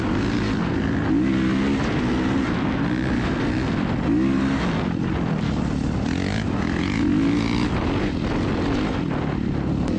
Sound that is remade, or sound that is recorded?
recorded